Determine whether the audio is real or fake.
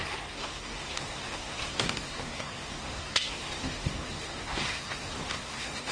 fake